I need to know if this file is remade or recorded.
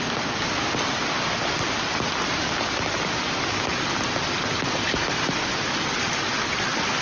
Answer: recorded